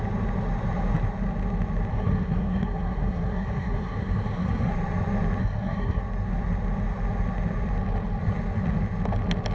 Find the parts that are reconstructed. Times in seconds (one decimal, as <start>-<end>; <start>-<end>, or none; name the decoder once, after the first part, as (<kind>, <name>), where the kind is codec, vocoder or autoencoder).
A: 1.9-4.7 (codec, SNAC); 5.4-6.0